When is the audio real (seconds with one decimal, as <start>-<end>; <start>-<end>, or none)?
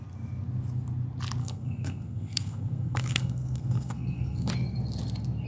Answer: 0.0-1.4; 4.5-5.5